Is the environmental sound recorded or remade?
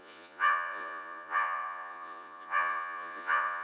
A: remade